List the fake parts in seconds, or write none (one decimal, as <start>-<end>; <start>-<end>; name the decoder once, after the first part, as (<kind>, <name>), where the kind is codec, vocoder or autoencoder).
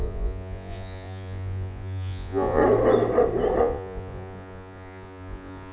0.0-2.6 (vocoder, Vocos); 3.6-5.7